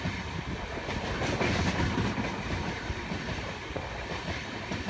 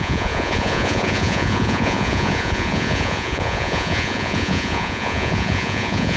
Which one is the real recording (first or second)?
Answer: first